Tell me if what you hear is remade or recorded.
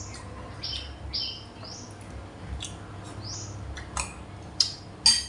recorded